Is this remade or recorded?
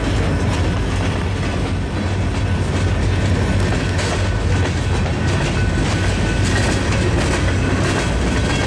recorded